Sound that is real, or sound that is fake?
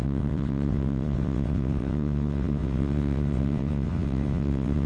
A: fake